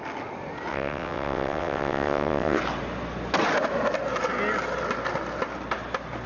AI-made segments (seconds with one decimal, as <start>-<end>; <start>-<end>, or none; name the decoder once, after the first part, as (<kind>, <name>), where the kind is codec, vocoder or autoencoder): 0.7-2.6 (vocoder, WaveNeXt)